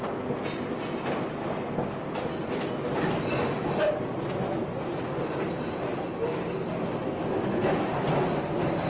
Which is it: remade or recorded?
recorded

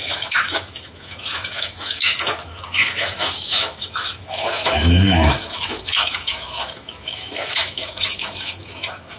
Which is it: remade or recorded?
remade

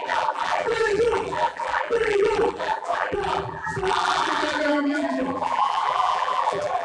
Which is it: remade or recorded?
remade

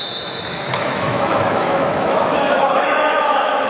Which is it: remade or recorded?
remade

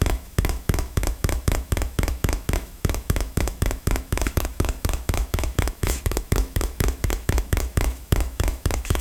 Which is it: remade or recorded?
remade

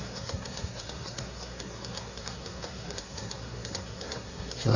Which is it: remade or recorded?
remade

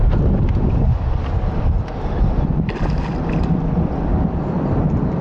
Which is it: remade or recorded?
recorded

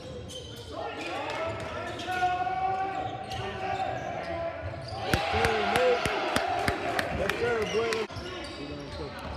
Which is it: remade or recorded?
recorded